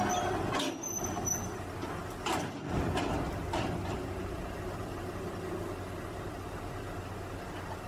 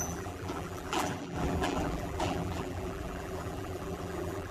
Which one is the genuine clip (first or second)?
first